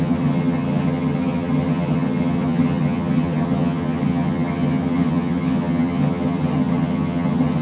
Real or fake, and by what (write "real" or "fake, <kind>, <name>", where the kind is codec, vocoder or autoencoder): fake, vocoder, HiFi-GAN